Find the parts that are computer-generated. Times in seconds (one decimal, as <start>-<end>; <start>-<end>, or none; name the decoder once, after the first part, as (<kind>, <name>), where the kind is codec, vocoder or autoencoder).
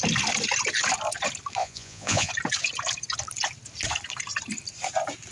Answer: 1.6-2.3 (vocoder, Vocos)